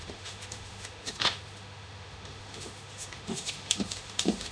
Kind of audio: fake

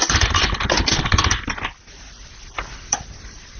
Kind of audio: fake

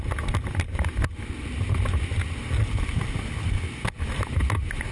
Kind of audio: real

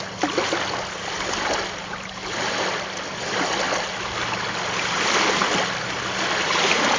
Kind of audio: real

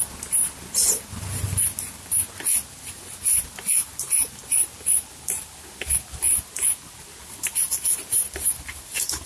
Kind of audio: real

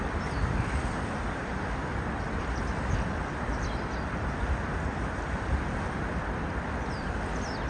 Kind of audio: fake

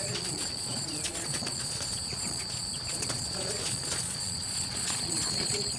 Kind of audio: fake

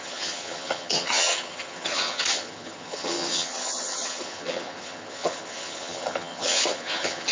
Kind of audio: fake